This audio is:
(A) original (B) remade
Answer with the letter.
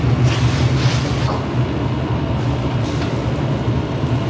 A